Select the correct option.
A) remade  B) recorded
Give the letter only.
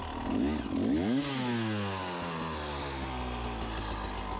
B